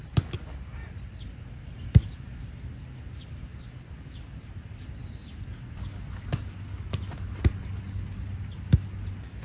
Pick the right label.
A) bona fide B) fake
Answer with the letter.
A